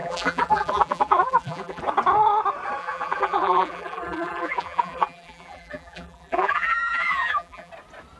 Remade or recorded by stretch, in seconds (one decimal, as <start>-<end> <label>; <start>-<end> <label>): 0.0-1.8 remade; 1.8-2.8 recorded; 2.8-7.7 remade; 7.7-8.2 recorded